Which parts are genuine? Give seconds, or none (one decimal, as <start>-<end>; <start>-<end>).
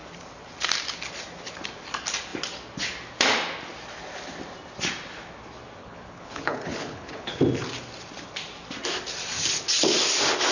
0.0-5.8; 7.4-10.5